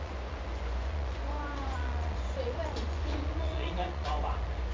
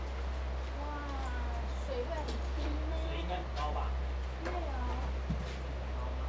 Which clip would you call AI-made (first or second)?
first